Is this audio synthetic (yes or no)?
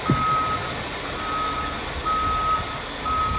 no